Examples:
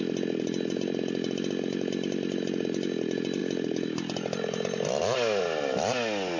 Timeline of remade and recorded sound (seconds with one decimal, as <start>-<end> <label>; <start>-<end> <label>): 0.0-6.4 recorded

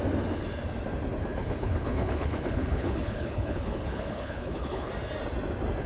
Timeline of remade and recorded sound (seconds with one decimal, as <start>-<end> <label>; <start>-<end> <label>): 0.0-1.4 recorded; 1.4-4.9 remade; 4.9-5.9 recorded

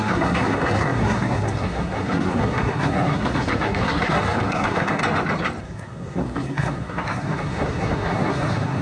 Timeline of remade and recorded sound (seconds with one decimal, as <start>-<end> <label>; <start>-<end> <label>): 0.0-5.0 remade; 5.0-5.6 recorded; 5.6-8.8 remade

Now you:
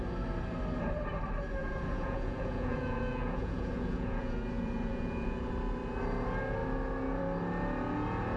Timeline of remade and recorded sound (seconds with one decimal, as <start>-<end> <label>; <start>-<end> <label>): 0.0-1.6 recorded; 1.6-5.5 remade; 5.5-8.4 recorded

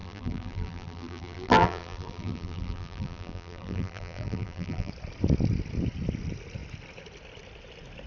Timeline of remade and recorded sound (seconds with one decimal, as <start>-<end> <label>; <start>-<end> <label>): 0.0-4.9 remade; 4.9-8.1 recorded